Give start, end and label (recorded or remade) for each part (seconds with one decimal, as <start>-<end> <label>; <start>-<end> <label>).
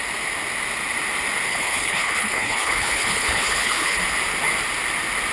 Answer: 0.0-1.5 recorded; 1.5-4.0 remade; 4.0-5.3 recorded